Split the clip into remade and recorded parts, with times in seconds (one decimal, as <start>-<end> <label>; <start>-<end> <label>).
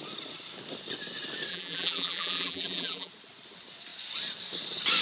0.0-1.5 recorded; 1.5-3.1 remade; 3.1-5.0 recorded